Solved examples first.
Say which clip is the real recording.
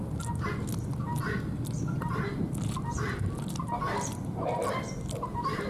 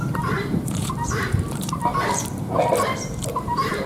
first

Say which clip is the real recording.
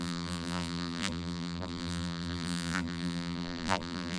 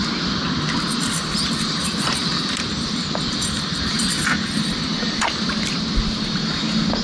second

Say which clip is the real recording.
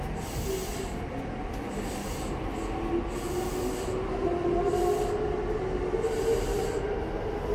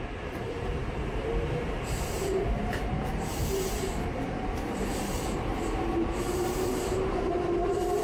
first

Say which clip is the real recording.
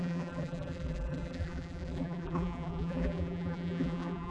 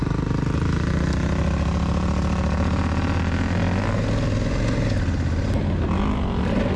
second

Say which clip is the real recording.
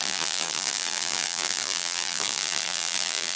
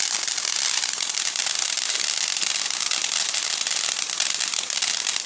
second